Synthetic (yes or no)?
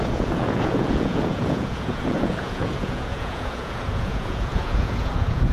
yes